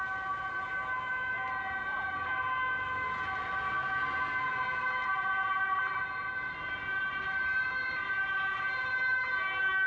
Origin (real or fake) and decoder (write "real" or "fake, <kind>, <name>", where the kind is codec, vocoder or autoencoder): real